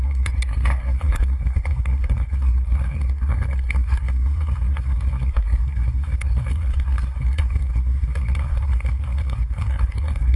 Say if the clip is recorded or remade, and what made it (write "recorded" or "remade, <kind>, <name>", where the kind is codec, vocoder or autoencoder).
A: remade, codec, SNAC